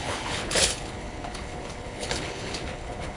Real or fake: fake